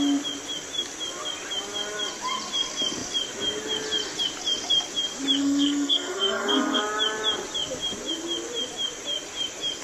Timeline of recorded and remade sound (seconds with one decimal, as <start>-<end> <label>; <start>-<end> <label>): 0.0-5.4 recorded; 5.4-6.8 remade; 6.8-9.8 recorded